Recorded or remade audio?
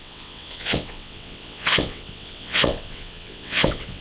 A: remade